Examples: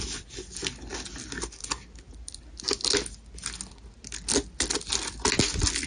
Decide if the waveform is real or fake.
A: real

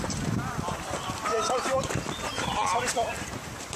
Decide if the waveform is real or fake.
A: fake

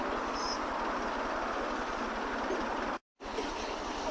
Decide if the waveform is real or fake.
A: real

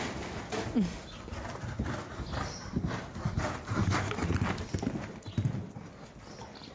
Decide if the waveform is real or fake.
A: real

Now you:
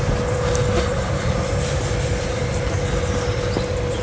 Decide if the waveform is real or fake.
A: real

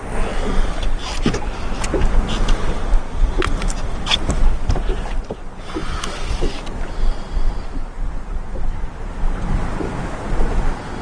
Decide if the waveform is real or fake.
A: real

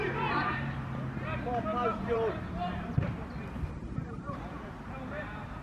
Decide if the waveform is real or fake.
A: fake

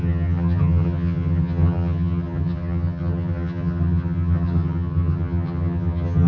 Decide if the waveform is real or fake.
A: fake